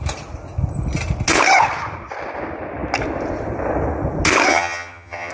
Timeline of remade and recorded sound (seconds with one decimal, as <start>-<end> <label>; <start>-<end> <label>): 0.0-4.5 recorded; 4.5-5.3 remade